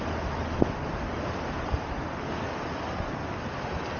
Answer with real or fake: real